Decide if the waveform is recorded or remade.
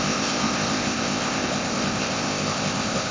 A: remade